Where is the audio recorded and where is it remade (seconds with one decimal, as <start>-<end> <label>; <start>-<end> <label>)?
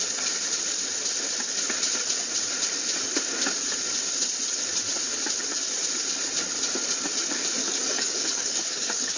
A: 0.0-7.6 recorded; 7.6-9.2 remade